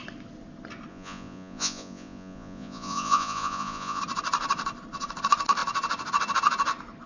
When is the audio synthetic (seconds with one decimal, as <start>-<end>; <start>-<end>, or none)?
0.9-4.0

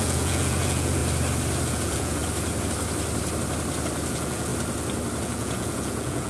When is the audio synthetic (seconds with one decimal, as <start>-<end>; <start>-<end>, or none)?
0.0-1.0; 1.7-2.2; 4.1-4.5; 5.2-6.3

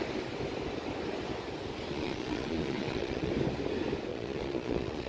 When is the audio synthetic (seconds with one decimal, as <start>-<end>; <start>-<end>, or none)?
1.9-3.3; 4.1-5.1

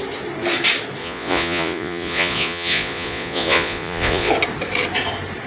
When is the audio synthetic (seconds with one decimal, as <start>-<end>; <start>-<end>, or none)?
1.0-4.3

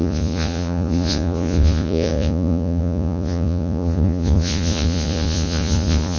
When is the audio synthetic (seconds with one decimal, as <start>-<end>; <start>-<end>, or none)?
0.0-6.2

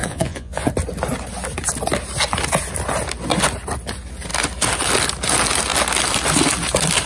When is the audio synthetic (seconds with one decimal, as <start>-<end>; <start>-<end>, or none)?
0.0-0.7

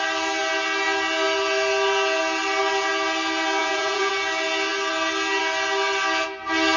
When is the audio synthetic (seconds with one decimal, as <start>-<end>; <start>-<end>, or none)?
3.6-4.1

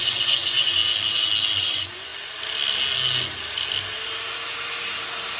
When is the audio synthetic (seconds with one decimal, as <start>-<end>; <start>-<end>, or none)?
0.0-0.8; 1.6-2.1